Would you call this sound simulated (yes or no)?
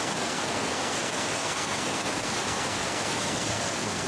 yes